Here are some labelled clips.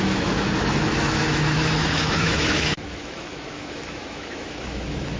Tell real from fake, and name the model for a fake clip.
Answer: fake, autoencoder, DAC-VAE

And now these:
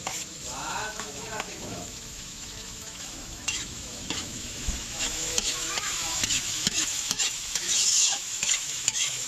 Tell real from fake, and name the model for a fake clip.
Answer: fake, autoencoder, DAC-VAE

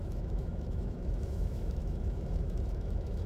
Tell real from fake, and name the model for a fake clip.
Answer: fake, autoencoder, DAC-VAE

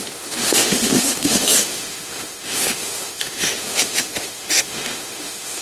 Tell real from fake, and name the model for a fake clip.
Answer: fake, autoencoder, DAC-VAE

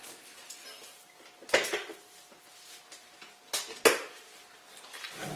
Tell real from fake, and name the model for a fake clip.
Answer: real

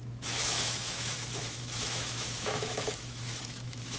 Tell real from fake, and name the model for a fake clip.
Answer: fake, autoencoder, DAC-VAE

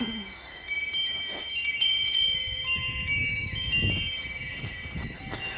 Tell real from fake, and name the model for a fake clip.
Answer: fake, autoencoder, DAC-VAE